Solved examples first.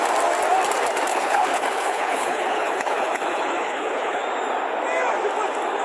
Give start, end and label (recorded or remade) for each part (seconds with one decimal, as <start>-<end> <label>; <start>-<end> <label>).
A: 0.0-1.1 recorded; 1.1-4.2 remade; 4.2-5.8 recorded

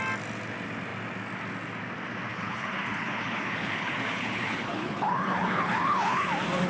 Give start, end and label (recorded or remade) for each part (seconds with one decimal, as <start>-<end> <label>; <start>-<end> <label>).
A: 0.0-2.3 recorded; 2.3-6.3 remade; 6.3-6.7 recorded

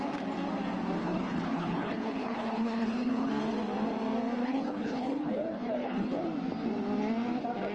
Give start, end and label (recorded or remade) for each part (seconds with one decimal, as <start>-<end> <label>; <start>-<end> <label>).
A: 0.0-1.0 recorded; 1.0-3.3 remade; 3.3-4.4 recorded; 4.4-6.2 remade; 6.2-7.7 recorded

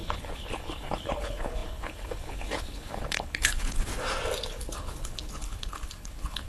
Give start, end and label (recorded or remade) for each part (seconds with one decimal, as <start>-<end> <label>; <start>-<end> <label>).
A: 0.0-3.9 remade; 3.9-4.5 recorded; 4.5-6.5 remade

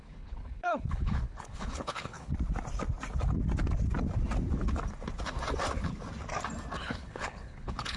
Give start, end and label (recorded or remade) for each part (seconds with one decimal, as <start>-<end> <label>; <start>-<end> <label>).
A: 0.0-2.3 remade; 2.3-6.8 recorded; 6.8-8.0 remade